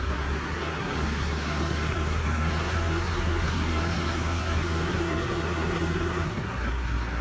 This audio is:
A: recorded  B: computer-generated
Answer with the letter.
B